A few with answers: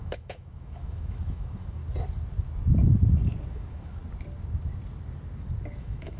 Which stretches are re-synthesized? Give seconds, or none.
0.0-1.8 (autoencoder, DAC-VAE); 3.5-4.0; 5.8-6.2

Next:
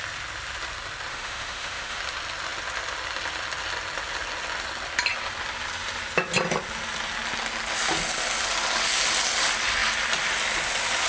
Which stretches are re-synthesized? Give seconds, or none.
1.1-2.0 (autoencoder, DAC-VAE)